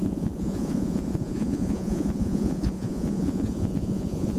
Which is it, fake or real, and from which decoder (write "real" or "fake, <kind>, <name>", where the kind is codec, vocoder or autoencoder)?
fake, vocoder, Vocos